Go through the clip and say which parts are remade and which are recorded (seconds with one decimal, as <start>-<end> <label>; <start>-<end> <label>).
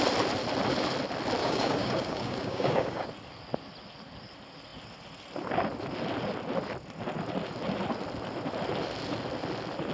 0.0-1.4 recorded; 1.4-3.1 remade; 3.1-9.9 recorded